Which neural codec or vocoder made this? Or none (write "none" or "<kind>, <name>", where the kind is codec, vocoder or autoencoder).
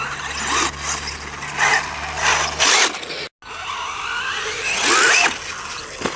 none